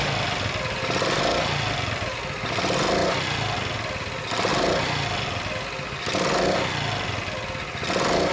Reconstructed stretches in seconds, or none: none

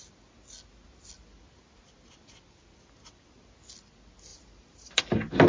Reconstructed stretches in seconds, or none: 4.3-5.0 (vocoder, BigVGAN v2)